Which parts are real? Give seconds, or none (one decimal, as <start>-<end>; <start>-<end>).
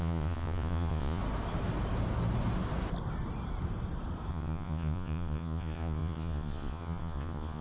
1.2-4.3